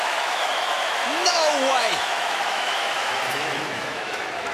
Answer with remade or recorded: remade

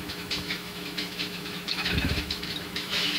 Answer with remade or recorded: remade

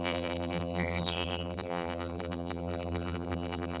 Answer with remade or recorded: remade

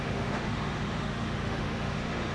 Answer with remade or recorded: remade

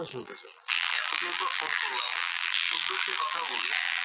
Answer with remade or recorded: remade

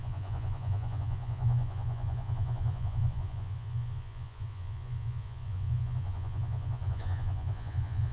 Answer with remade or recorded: remade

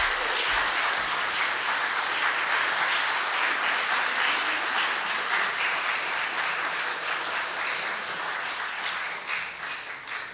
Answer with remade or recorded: recorded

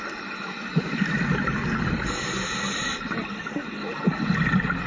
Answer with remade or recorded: recorded